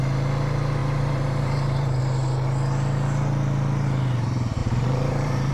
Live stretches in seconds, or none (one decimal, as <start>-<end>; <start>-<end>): 0.0-0.8; 2.0-4.6